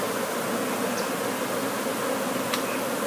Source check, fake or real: real